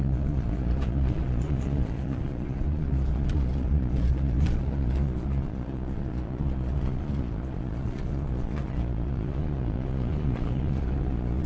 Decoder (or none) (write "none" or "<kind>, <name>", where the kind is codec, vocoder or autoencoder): vocoder, Vocos